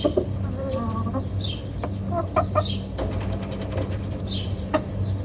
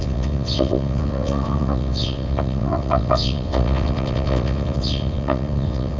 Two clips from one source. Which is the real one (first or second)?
first